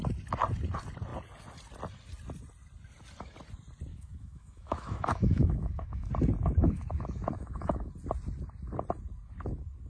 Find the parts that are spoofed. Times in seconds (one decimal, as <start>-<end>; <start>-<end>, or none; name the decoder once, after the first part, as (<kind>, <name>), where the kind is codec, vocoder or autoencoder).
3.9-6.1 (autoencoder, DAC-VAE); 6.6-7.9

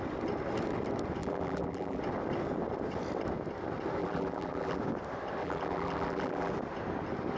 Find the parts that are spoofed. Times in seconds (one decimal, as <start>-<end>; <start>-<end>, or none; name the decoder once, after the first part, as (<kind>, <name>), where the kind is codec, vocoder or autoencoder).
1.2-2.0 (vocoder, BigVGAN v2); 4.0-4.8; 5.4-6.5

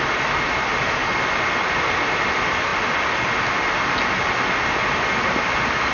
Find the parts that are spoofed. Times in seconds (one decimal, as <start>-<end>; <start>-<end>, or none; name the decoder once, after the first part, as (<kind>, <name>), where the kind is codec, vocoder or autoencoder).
none